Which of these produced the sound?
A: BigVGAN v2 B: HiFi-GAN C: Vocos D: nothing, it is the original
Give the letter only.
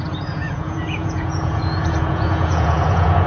C